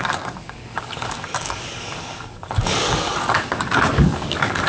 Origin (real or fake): fake